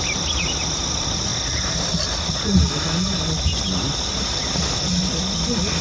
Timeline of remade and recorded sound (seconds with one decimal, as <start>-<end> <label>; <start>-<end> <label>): 0.0-5.8 recorded